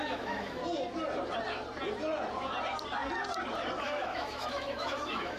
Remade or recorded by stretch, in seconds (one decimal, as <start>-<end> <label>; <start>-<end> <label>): 0.0-0.6 remade; 0.6-3.8 recorded; 3.8-5.4 remade